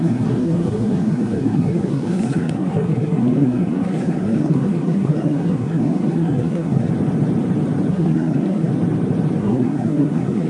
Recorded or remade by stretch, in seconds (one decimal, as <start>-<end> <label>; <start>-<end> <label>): 0.0-6.9 remade; 6.9-7.9 recorded; 7.9-8.7 remade; 8.7-9.4 recorded; 9.4-10.5 remade